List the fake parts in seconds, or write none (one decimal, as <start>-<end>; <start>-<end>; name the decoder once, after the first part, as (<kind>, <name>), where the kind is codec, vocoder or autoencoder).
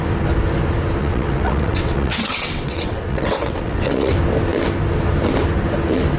1.0-4.1 (vocoder, WaveNeXt)